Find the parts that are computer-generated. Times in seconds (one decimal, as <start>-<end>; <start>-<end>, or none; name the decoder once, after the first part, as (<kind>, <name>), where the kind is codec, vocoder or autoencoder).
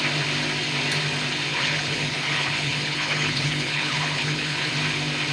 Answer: 1.5-4.7 (codec, HILCodec)